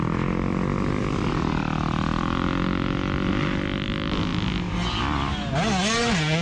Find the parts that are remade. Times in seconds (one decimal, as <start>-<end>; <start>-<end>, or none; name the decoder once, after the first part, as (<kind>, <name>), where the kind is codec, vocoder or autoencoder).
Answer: none